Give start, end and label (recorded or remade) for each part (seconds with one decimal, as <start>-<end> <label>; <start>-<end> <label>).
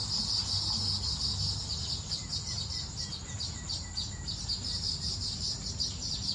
0.0-2.2 recorded; 2.2-6.3 remade